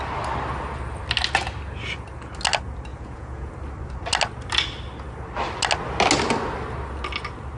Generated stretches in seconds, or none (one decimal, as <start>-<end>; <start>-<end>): 2.9-3.5